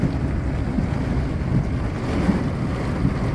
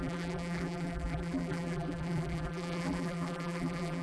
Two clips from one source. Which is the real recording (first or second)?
first